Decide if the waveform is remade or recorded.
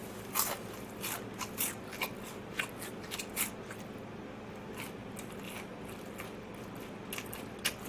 recorded